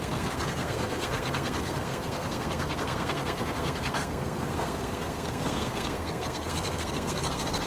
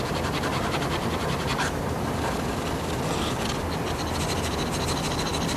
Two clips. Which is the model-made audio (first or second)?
first